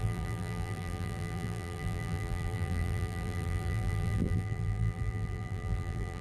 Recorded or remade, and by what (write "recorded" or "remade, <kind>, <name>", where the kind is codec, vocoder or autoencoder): remade, vocoder, BigVGAN v2